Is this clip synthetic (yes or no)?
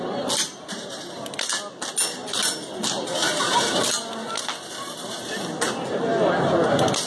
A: no